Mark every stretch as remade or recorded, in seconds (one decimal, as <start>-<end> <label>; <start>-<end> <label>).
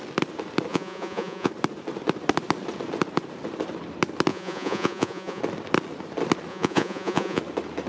0.0-0.7 recorded; 0.7-1.5 remade; 1.5-4.3 recorded; 4.3-5.4 remade; 5.4-6.5 recorded; 6.5-7.4 remade; 7.4-7.9 recorded